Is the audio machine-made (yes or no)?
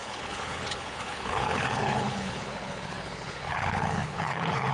yes